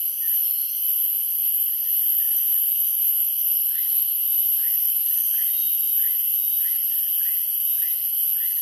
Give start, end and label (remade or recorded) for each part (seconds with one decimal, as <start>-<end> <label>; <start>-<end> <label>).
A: 0.0-6.2 recorded; 6.2-8.6 remade